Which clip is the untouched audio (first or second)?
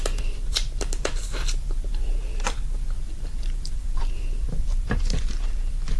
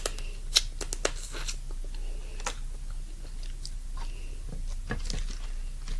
second